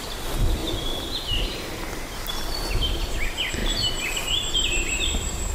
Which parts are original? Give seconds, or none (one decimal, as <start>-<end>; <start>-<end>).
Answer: 0.6-3.2; 3.6-4.5